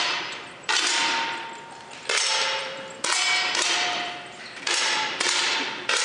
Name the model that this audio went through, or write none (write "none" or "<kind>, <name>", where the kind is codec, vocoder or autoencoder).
vocoder, BigVGAN v2